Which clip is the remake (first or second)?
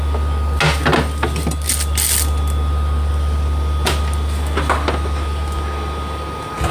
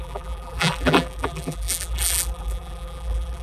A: second